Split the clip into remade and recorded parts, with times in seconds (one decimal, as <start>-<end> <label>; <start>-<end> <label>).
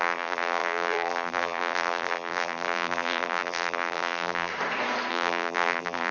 0.0-4.5 remade; 4.5-5.1 recorded; 5.1-6.1 remade